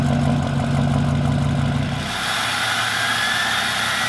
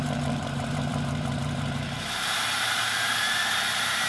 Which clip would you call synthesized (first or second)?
second